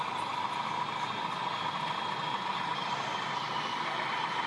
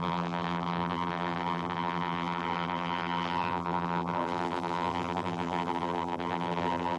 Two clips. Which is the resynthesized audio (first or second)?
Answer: second